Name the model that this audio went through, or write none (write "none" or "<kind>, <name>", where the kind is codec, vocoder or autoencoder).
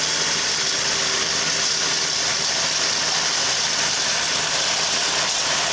none